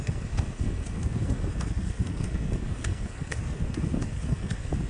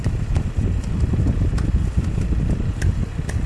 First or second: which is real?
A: second